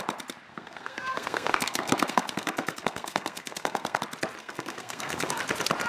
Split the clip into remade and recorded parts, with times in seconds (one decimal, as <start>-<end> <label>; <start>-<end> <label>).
0.0-0.5 recorded; 0.5-4.0 remade; 4.0-4.4 recorded; 4.4-5.4 remade; 5.4-5.9 recorded